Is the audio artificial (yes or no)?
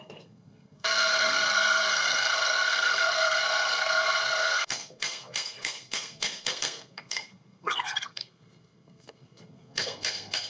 yes